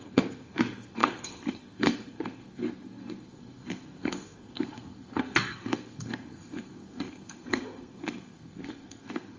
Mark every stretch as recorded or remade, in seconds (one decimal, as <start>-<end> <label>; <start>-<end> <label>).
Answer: 0.0-9.4 remade